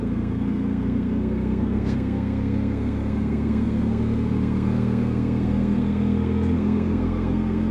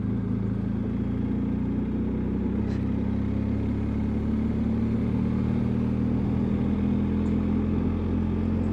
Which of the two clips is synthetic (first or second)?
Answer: first